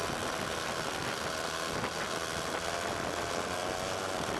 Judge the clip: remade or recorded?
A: recorded